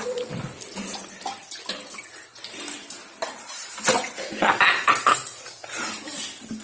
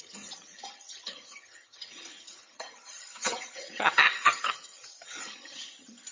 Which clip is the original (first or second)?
first